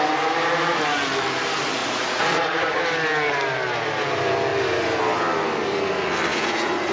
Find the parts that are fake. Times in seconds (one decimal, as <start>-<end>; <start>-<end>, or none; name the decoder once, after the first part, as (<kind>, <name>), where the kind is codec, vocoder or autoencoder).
1.8-2.8 (vocoder, Vocos); 6.3-6.9